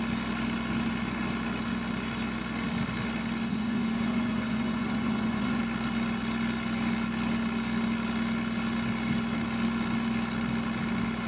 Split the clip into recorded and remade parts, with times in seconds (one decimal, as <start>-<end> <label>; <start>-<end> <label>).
0.0-3.5 recorded; 3.5-5.6 remade; 5.6-11.3 recorded